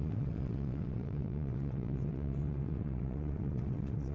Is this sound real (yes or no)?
no